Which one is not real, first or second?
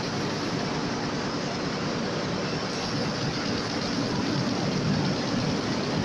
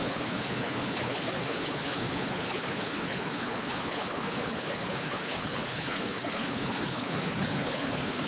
second